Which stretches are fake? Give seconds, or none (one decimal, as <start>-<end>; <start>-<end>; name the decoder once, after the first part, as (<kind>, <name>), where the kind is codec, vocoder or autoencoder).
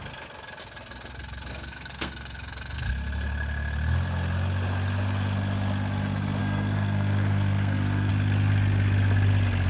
1.5-2.9 (codec, SNAC); 6.4-8.1